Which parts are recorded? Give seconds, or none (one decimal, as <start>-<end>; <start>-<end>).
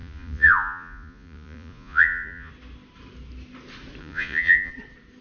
2.5-4.0; 4.7-5.2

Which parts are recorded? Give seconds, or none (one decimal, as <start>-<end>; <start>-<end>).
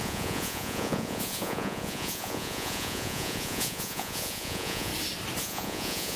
4.9-5.4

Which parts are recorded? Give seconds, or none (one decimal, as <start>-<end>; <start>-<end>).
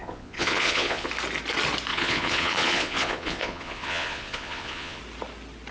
1.1-1.9; 5.0-5.7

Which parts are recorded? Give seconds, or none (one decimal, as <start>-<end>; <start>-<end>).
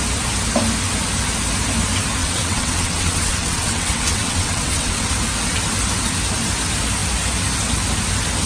0.0-2.2; 5.1-8.5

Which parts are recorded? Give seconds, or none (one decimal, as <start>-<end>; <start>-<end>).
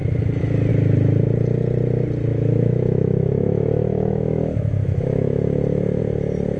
0.0-2.3; 6.0-6.6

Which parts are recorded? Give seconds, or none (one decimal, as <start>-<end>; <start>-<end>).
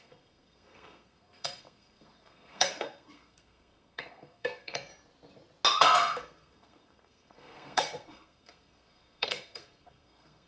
4.9-5.8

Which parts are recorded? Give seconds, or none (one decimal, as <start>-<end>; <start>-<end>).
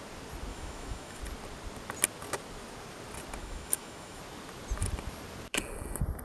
0.0-0.5; 1.2-3.4; 4.2-6.2